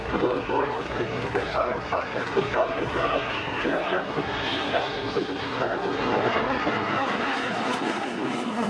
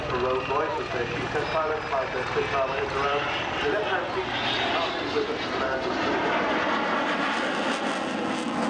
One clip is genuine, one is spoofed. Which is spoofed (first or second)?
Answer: first